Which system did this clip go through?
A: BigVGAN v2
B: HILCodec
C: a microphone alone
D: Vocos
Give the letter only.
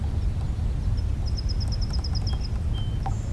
C